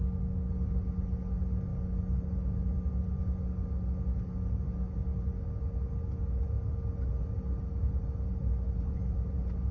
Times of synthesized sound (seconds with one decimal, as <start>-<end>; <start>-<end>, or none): none